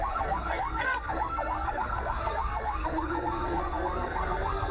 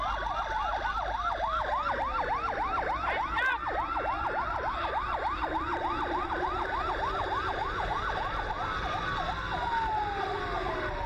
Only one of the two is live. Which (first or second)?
second